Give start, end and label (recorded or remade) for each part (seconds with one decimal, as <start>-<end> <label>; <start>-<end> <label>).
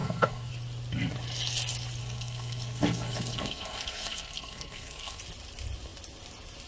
0.0-0.5 remade; 0.5-2.0 recorded; 2.0-5.2 remade; 5.2-6.7 recorded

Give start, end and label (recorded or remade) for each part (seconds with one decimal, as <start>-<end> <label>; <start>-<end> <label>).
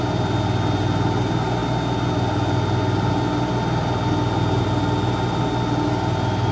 0.0-6.5 recorded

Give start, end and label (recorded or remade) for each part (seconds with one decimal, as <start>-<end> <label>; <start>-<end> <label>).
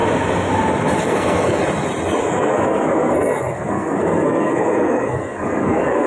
0.0-1.0 recorded; 1.0-1.6 remade; 1.6-2.2 recorded; 2.2-6.1 remade